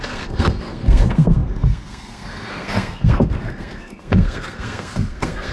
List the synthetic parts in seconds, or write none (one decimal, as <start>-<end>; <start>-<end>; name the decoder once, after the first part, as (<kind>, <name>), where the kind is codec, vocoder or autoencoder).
0.0-5.5 (codec, SNAC)

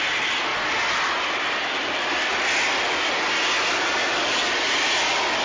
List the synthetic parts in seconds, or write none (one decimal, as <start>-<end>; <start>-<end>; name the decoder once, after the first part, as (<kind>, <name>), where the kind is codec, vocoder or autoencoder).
none

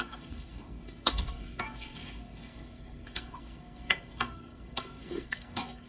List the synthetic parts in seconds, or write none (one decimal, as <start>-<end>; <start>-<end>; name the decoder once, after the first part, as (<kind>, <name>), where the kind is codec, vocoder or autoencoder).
0.0-5.9 (codec, SNAC)